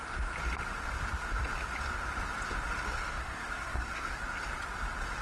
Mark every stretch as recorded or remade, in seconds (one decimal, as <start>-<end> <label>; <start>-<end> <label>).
0.0-3.1 recorded; 3.1-4.2 remade; 4.2-5.2 recorded